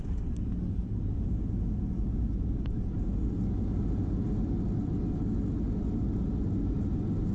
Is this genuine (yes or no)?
yes